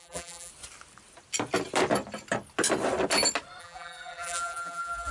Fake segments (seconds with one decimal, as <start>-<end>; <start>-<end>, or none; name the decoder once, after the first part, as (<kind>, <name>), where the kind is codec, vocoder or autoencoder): 0.0-0.5 (vocoder, BigVGAN v2); 3.6-5.1

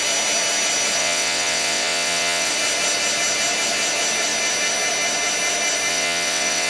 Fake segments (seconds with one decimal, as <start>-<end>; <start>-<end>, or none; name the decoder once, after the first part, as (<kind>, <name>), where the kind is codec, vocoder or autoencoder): 1.0-2.5 (vocoder, WaveNeXt); 5.9-6.7

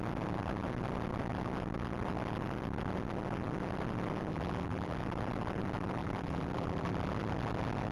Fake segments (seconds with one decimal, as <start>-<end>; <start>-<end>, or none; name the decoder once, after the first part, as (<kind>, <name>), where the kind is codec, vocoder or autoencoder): 4.3-5.0 (vocoder, BigVGAN v2); 6.0-7.1

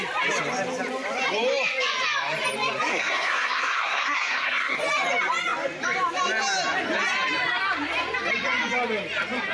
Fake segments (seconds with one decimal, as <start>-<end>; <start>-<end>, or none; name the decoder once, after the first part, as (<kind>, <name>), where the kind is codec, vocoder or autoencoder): 2.9-4.8 (codec, SNAC)

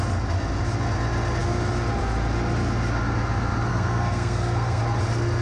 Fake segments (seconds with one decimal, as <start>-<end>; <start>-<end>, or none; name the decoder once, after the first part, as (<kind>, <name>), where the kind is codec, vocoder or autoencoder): 3.7-4.8 (codec, SNAC)

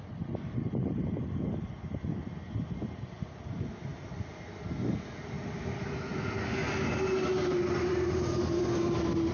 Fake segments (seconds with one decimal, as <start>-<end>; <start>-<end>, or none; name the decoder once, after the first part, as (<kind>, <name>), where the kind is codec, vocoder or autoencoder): none